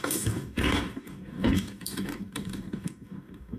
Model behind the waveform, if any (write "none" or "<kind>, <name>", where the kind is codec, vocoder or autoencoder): codec, DAC